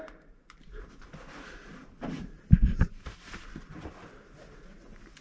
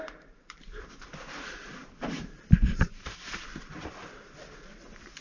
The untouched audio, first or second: first